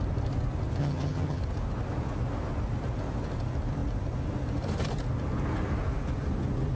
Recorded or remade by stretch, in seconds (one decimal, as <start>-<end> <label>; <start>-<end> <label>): 0.0-0.8 recorded; 0.8-1.4 remade; 1.4-6.8 recorded

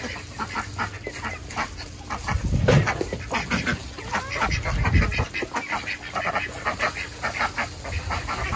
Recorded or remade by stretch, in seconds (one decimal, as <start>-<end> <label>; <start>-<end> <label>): 0.0-8.6 recorded

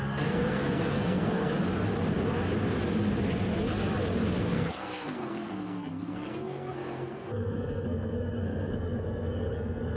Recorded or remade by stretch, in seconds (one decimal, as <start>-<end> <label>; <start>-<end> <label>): 0.0-1.5 remade; 1.5-4.4 recorded; 4.4-10.0 remade

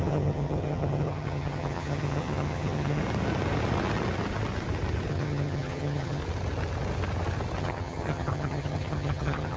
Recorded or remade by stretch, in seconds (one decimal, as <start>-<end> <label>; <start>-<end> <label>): 0.0-3.0 remade; 3.0-5.1 recorded; 5.1-6.2 remade; 6.2-7.6 recorded; 7.6-9.6 remade

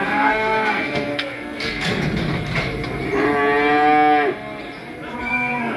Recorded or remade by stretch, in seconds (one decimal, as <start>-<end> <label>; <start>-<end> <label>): 0.0-1.9 remade; 1.9-5.2 recorded; 5.2-5.8 remade

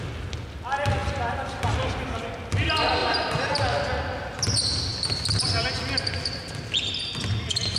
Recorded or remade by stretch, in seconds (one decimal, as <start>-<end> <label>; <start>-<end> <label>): 0.0-3.0 recorded; 3.0-3.6 remade; 3.6-7.8 recorded